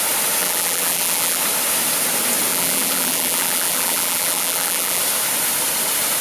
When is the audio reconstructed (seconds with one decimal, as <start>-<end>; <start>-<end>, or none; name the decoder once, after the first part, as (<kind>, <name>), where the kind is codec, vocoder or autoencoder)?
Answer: 0.4-1.4 (vocoder, BigVGAN v2); 2.5-5.0